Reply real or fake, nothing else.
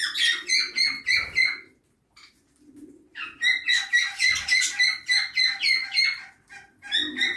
real